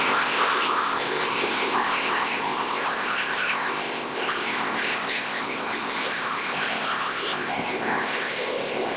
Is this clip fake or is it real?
fake